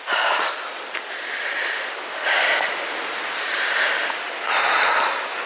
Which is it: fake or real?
real